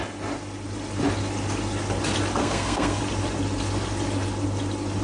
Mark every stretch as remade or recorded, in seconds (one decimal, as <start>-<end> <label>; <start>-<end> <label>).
0.0-2.4 recorded; 2.4-3.0 remade; 3.0-5.0 recorded